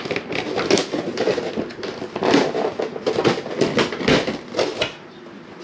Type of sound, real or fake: real